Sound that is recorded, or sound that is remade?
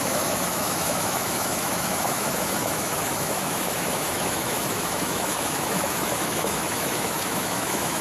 remade